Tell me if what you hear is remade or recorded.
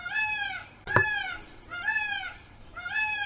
remade